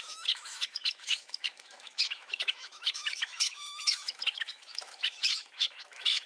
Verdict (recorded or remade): remade